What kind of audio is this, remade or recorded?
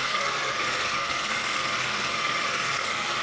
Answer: remade